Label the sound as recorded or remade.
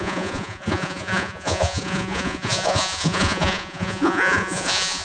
remade